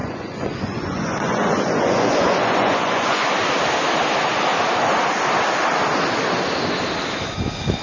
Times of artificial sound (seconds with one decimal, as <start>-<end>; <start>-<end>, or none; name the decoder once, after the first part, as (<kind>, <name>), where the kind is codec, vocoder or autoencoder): 0.0-3.3 (vocoder, Vocos)